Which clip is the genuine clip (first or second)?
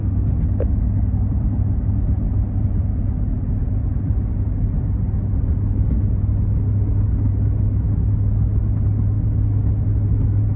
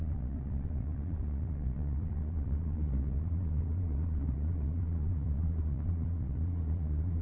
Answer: first